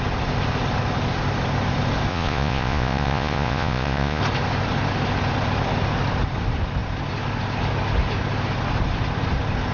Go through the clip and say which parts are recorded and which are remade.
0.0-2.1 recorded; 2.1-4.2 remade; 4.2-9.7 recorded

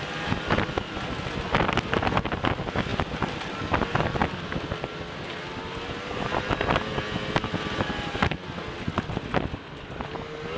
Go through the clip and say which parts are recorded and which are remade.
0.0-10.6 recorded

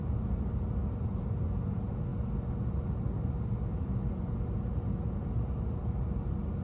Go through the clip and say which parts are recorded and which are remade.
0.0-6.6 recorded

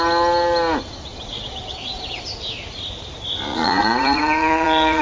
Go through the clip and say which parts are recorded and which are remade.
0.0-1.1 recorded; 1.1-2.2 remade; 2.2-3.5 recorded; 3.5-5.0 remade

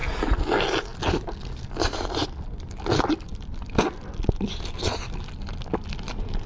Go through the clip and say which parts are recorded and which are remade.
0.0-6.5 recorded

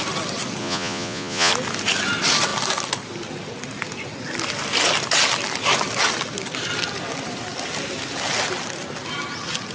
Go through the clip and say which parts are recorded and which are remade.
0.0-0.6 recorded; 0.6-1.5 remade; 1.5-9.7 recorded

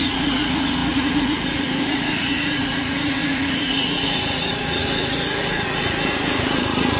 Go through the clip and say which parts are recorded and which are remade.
0.0-7.0 remade